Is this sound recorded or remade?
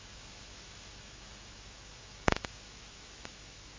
remade